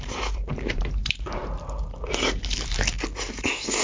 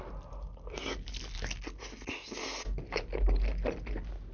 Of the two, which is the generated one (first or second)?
first